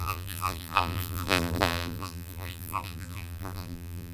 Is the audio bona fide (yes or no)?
no